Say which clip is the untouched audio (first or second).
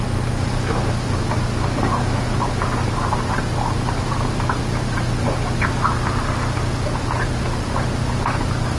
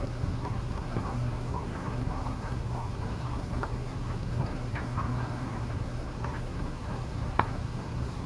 first